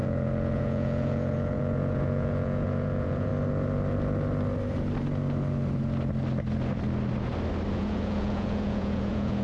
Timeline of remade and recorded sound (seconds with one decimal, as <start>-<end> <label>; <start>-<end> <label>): 0.0-3.3 remade; 3.3-7.7 recorded; 7.7-9.4 remade